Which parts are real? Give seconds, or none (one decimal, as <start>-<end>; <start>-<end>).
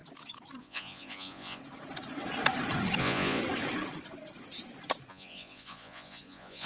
0.0-0.6; 1.6-3.0; 3.4-5.1